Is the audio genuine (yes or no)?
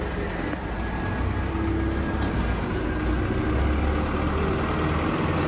yes